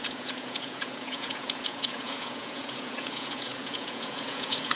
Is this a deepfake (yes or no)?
yes